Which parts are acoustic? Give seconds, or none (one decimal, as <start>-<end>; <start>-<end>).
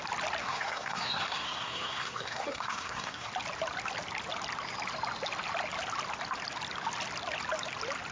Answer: 0.0-0.4; 3.3-8.1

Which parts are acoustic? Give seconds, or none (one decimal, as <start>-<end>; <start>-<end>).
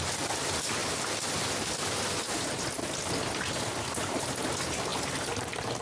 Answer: 0.0-5.8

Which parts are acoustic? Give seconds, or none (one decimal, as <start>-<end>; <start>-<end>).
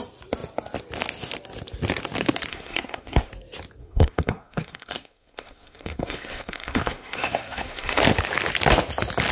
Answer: 0.0-2.5; 3.3-3.8; 8.0-9.3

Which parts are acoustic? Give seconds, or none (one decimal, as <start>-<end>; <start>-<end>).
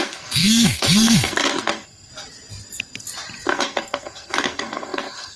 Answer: 2.1-3.5